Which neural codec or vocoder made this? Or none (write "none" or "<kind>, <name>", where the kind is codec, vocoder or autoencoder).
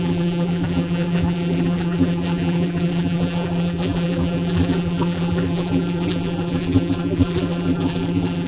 vocoder, BigVGAN v2